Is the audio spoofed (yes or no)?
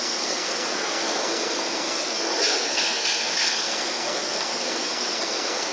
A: yes